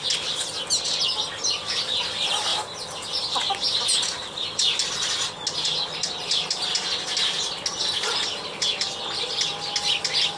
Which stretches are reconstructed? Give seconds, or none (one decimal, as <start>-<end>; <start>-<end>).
none